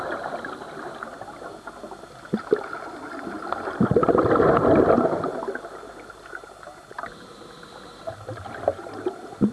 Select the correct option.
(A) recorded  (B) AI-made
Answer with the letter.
A